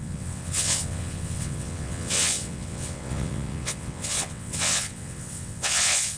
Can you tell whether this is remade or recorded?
remade